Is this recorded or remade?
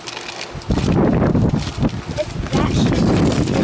recorded